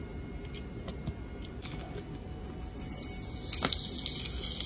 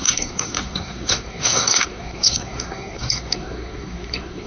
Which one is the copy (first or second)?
second